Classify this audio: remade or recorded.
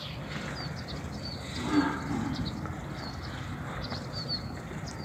recorded